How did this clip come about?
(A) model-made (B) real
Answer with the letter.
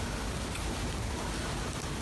B